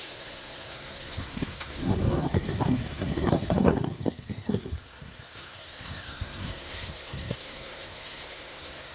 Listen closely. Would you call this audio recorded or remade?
remade